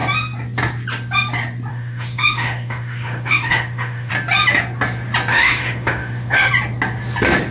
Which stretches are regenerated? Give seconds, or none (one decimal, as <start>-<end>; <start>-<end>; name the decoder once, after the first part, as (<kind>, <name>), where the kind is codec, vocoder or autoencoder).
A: 1.7-4.1 (autoencoder, DAC-VAE); 5.3-6.5